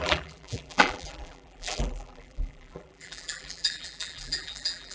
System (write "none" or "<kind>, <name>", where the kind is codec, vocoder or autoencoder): vocoder, BigVGAN v2